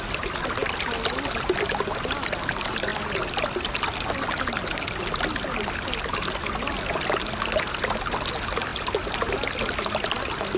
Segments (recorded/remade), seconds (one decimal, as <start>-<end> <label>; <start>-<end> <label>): 0.0-10.6 recorded